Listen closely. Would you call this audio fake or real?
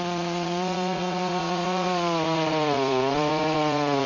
fake